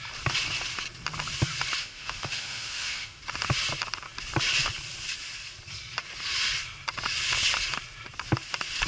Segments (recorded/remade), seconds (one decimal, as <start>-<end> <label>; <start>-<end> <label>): 0.0-1.8 recorded; 1.8-3.2 remade; 3.2-8.9 recorded